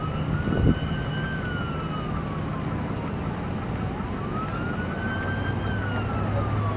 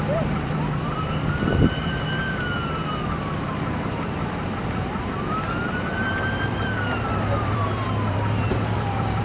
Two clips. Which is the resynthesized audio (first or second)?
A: second